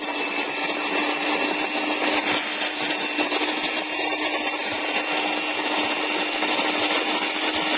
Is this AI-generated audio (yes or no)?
no